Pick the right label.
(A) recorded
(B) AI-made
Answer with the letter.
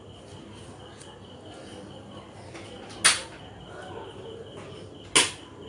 A